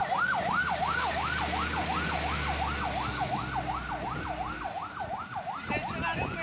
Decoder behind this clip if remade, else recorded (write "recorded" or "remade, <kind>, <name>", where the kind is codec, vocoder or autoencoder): recorded